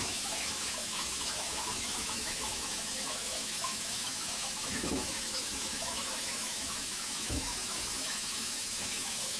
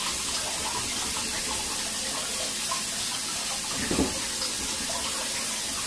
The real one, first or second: second